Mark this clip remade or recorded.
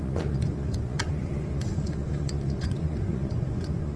remade